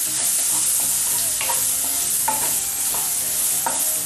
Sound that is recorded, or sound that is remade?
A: recorded